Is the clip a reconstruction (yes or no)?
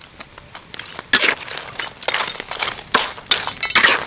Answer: no